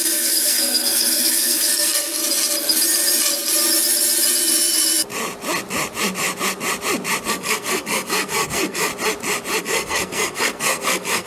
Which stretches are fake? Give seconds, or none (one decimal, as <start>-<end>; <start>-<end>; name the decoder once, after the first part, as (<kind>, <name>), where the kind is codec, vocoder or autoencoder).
0.0-2.2 (codec, SNAC); 7.3-8.9; 9.6-11.3